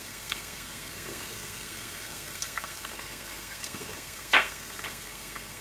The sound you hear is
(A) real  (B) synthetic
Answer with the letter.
B